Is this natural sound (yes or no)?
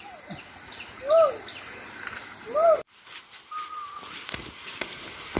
yes